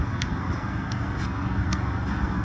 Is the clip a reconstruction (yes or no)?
yes